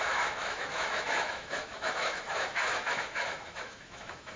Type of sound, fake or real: fake